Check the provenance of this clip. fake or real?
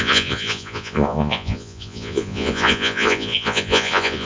fake